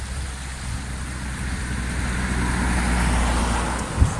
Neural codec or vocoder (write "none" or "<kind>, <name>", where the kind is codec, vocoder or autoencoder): none